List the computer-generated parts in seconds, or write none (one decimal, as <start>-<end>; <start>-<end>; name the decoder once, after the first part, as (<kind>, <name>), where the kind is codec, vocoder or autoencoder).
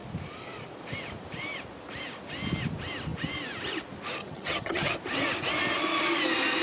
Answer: 4.2-4.9 (vocoder, HiFi-GAN)